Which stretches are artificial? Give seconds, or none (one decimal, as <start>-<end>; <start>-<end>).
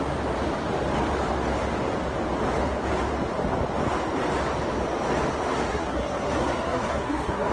5.7-7.5